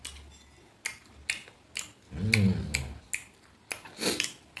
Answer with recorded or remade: recorded